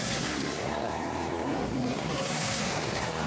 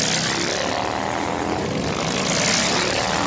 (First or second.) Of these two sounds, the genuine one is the second